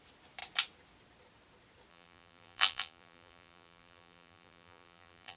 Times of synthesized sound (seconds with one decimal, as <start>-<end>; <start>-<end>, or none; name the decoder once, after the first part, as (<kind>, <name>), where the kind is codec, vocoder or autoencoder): 1.9-5.4 (vocoder, BigVGAN v2)